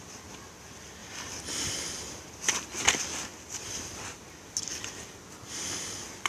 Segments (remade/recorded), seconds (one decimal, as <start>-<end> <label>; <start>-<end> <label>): 0.0-6.3 recorded